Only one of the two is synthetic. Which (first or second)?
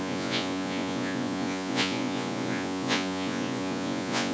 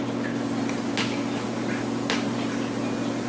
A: first